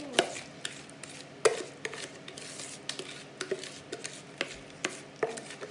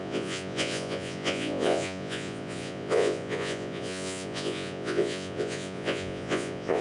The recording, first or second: first